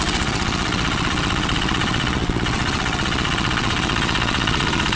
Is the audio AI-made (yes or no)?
yes